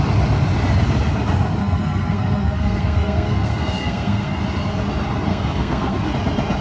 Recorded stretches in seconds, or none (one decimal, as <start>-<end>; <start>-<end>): 0.0-1.6; 4.4-5.3; 6.1-6.6